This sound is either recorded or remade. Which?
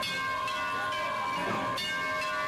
recorded